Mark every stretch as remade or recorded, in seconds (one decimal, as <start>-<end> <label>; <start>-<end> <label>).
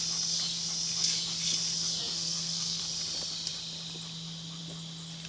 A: 0.0-2.0 recorded; 2.0-2.8 remade; 2.8-5.3 recorded